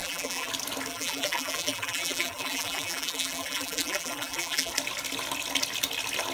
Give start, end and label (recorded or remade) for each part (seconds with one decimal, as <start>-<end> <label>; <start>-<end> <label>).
0.0-0.5 remade; 0.5-0.9 recorded; 0.9-4.7 remade; 4.7-6.3 recorded